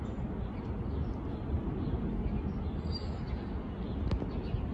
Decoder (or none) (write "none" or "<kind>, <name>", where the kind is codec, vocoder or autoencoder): none